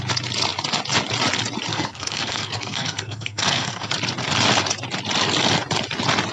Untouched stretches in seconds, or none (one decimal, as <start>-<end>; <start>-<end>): 0.0-1.7; 3.9-6.3